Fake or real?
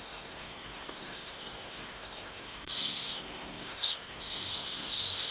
fake